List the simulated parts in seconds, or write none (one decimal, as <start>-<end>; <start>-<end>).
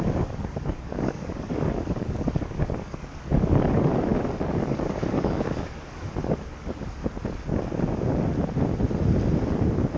0.0-7.0